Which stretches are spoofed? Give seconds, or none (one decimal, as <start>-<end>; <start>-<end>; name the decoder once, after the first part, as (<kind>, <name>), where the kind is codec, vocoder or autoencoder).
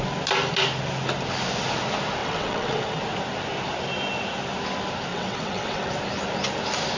2.2-3.0 (vocoder, WaveNeXt); 5.1-5.9